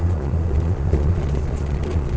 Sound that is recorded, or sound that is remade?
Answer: remade